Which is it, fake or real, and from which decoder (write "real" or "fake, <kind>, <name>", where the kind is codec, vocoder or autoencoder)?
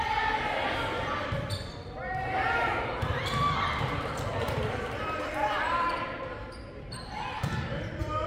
fake, vocoder, BigVGAN v2